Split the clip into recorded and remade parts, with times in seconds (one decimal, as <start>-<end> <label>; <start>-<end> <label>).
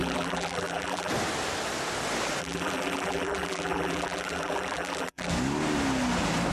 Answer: 0.0-1.1 remade; 1.1-2.4 recorded; 2.4-5.3 remade; 5.3-6.5 recorded